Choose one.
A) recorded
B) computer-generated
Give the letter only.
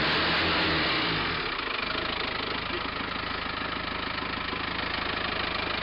A